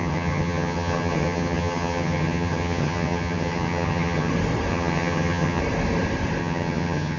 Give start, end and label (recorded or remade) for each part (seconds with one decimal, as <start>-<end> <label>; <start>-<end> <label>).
0.0-4.3 remade; 4.3-4.7 recorded; 4.7-5.6 remade; 5.6-6.4 recorded; 6.4-7.2 remade